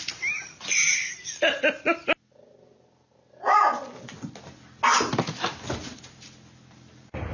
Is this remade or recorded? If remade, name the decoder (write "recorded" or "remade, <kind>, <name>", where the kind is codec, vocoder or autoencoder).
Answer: recorded